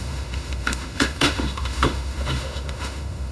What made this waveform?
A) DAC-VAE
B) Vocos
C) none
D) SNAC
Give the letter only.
A